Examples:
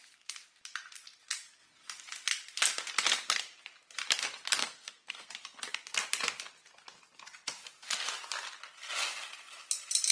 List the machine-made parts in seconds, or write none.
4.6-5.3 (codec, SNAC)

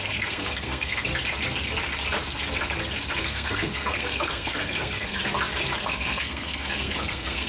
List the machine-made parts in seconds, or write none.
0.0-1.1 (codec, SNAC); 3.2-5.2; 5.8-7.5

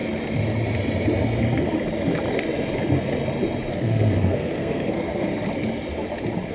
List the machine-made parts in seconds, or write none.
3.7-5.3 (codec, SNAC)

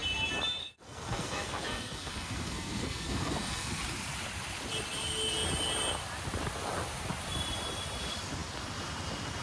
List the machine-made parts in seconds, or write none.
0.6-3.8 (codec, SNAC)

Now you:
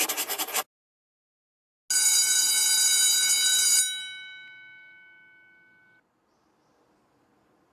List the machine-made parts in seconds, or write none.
none